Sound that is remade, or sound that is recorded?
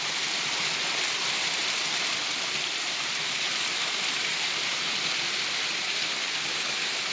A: recorded